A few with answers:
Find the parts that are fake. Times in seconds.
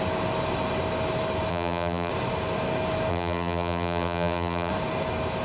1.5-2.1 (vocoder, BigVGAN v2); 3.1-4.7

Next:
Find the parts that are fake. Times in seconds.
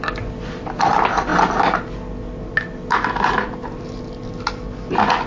none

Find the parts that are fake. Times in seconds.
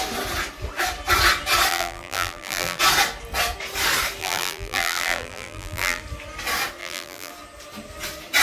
1.7-2.8 (vocoder, BigVGAN v2); 4.2-6.0; 6.8-7.3